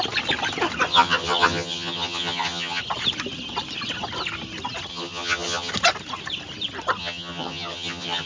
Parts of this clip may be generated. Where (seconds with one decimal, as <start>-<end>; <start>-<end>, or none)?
0.9-2.8; 4.9-5.7; 7.0-8.3